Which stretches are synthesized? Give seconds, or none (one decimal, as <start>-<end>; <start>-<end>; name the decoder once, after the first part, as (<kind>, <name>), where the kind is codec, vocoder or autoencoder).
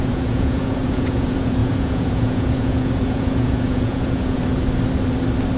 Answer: 0.0-4.4 (vocoder, Vocos)